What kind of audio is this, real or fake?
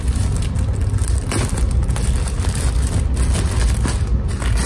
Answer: real